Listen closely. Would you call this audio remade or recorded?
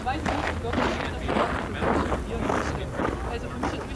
recorded